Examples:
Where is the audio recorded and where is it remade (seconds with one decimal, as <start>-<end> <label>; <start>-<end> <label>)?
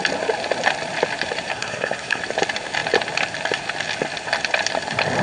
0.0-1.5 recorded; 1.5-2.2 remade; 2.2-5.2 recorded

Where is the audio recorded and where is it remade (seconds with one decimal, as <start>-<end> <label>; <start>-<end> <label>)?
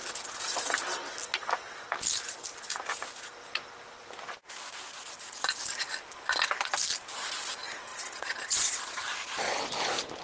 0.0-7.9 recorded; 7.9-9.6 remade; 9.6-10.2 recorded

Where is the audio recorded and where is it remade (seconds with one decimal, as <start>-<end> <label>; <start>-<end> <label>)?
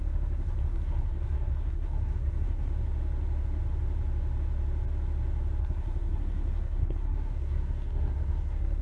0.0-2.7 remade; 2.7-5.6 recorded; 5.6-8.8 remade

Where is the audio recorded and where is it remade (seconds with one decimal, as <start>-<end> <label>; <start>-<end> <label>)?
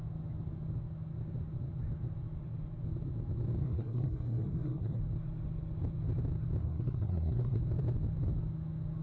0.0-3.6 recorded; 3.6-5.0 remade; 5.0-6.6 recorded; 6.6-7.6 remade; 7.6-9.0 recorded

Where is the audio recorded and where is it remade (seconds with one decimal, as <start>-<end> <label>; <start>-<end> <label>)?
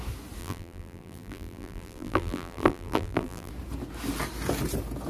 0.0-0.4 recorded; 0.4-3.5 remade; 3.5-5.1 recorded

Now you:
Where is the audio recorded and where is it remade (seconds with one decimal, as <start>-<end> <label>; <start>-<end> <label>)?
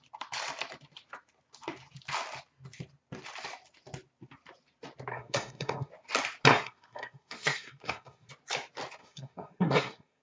0.0-5.1 recorded; 5.1-5.9 remade; 5.9-6.5 recorded; 6.5-8.3 remade; 8.3-9.0 recorded; 9.0-10.2 remade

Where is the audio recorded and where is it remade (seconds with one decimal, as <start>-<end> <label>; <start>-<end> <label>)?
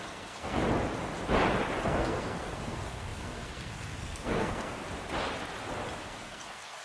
0.0-0.6 remade; 0.6-1.8 recorded; 1.8-4.8 remade; 4.8-6.0 recorded; 6.0-6.8 remade